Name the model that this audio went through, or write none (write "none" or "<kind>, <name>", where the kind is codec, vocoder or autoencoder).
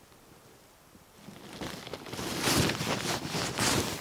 none